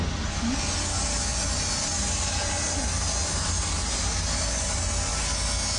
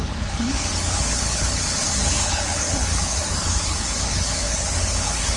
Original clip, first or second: first